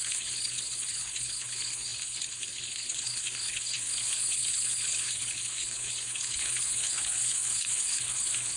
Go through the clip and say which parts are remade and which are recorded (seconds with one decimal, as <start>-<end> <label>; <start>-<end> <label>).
0.0-8.6 remade